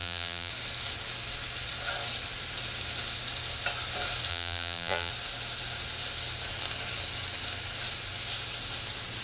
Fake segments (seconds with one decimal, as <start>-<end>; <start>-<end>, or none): 0.0-0.5; 4.3-5.1